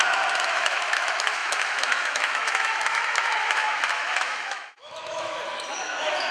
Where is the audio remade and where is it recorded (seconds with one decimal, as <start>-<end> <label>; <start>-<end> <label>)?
0.0-0.5 recorded; 0.5-6.3 remade